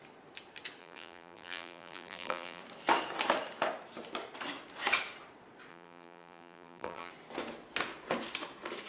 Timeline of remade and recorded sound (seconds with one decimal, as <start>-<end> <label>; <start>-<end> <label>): 0.0-0.8 recorded; 0.8-2.6 remade; 2.6-5.7 recorded; 5.7-7.1 remade; 7.1-8.9 recorded